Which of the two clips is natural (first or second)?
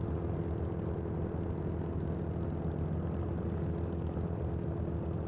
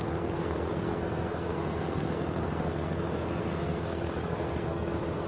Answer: first